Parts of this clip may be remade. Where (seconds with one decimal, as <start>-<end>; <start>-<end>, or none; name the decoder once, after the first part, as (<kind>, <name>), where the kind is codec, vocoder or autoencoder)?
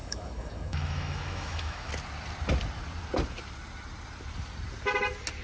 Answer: 0.0-1.9 (autoencoder, DAC-VAE)